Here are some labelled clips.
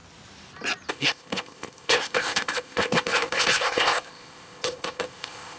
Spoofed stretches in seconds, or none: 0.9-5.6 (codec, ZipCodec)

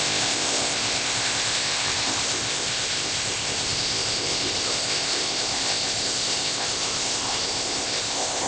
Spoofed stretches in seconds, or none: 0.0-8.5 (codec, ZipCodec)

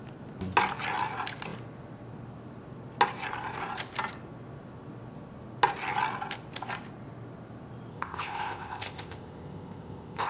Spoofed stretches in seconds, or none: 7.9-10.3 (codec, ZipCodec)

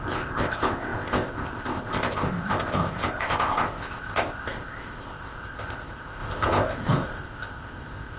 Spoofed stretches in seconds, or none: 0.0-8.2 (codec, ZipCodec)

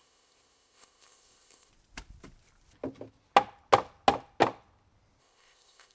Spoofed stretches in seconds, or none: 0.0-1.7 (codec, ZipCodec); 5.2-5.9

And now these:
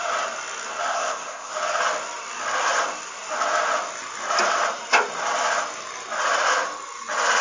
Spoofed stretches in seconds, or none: 0.9-1.5 (codec, ZipCodec)

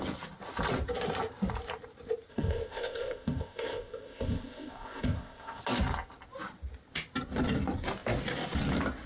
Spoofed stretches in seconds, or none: 2.3-5.6 (codec, ZipCodec)

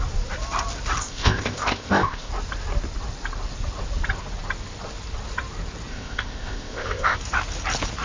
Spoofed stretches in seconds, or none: 1.0-2.3 (codec, ZipCodec); 5.9-7.2